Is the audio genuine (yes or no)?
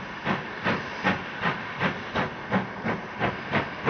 yes